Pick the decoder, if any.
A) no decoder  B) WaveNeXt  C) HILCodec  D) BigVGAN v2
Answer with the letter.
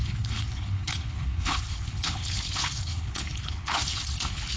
C